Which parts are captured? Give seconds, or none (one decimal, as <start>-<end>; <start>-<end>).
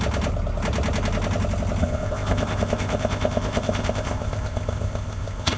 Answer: 0.0-1.8